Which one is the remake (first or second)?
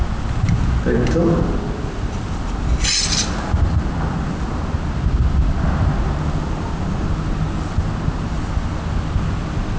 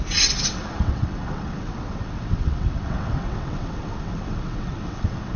second